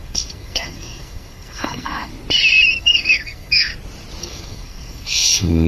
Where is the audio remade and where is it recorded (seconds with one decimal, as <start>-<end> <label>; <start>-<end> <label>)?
0.0-2.1 remade; 2.1-2.8 recorded; 2.8-3.7 remade; 3.7-4.2 recorded; 4.2-5.7 remade